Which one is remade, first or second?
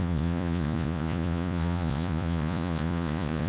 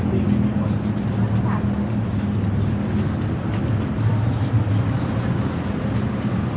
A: first